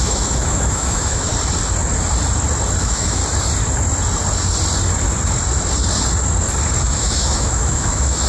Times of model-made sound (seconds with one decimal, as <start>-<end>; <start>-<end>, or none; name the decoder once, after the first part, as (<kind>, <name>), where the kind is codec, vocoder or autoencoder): 0.0-1.3 (autoencoder, DAC-VAE); 2.8-3.2; 6.8-8.3

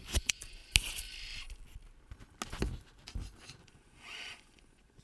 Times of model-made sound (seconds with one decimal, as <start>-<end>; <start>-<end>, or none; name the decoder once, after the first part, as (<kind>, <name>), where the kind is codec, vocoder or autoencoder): 0.0-0.6 (vocoder, Vocos); 3.6-5.0

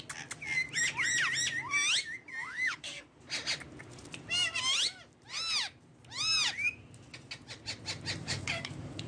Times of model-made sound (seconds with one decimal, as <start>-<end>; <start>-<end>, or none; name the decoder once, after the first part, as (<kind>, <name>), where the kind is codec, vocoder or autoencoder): 2.4-3.0 (codec, DAC); 8.2-9.1